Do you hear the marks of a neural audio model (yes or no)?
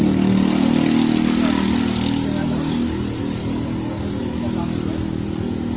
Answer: no